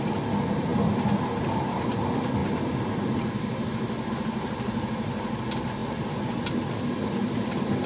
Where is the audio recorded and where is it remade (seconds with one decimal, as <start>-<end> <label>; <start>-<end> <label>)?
0.0-7.9 recorded